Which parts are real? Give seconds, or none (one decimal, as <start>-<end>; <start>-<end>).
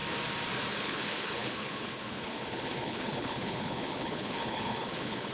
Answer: 0.0-0.7